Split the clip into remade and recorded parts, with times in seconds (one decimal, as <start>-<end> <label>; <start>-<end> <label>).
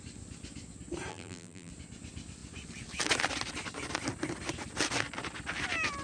0.0-1.1 recorded; 1.1-1.7 remade; 1.7-6.0 recorded